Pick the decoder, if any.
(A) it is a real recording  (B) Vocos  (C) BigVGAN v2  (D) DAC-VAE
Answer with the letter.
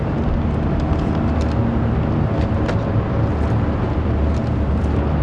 A